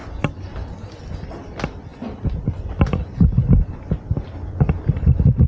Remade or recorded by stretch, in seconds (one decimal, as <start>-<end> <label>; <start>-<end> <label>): 0.0-1.0 remade; 1.0-1.9 recorded; 1.9-3.6 remade; 3.6-5.5 recorded